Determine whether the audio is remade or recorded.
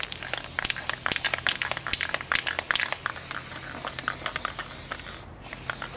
recorded